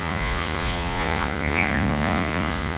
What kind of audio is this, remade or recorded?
remade